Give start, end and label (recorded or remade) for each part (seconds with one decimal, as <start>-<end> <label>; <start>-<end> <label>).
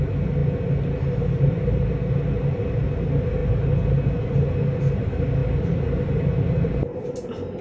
0.0-7.6 recorded